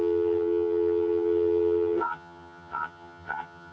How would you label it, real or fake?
fake